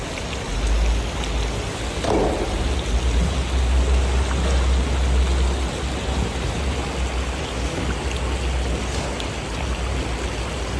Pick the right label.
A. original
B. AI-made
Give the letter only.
A